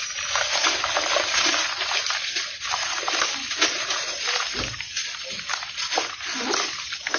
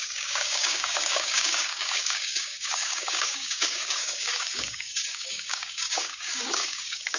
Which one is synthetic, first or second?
second